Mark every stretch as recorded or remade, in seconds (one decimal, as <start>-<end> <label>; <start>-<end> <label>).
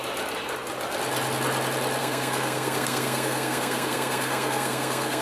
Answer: 0.0-2.0 recorded; 2.0-5.2 remade